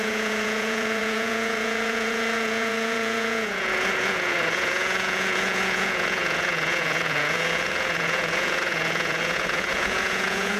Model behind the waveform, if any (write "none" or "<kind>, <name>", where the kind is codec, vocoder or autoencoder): vocoder, Vocos